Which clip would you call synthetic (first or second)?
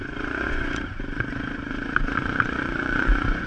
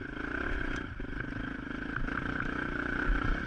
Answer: first